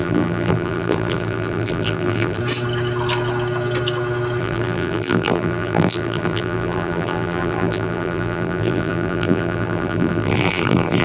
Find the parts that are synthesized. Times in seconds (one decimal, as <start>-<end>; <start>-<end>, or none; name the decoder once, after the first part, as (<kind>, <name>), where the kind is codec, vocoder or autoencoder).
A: 0.0-2.4 (vocoder, BigVGAN v2); 4.4-11.0